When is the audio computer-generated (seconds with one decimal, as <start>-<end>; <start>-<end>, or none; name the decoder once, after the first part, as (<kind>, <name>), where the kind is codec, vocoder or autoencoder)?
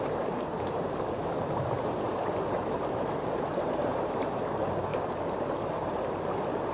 0.5-4.5 (vocoder, BigVGAN v2); 4.9-5.5